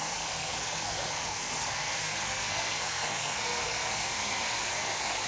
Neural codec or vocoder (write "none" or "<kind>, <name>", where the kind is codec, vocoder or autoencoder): codec, SNAC